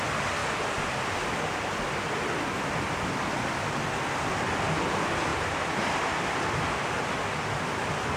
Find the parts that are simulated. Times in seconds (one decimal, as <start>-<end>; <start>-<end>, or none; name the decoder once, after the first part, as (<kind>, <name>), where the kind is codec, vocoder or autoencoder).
none